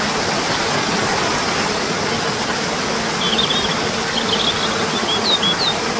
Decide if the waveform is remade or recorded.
recorded